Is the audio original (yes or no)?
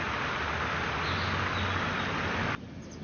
yes